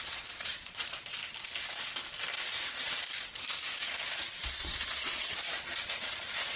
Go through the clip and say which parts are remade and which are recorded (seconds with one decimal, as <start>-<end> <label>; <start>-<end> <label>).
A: 0.0-1.2 remade; 1.2-4.1 recorded; 4.1-6.6 remade